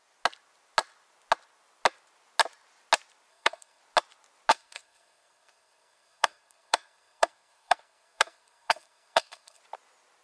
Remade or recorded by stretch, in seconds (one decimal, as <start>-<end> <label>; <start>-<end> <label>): 0.0-3.3 recorded; 3.3-3.8 remade; 3.8-4.5 recorded; 4.5-9.6 remade; 9.6-10.2 recorded